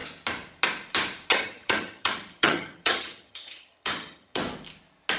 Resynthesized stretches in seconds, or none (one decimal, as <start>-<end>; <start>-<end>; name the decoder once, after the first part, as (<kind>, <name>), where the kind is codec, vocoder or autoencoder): 1.3-4.4 (vocoder, HiFi-GAN)